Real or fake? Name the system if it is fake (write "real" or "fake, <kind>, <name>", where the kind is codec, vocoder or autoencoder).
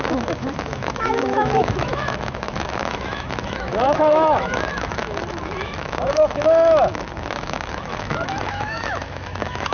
fake, autoencoder, DAC-VAE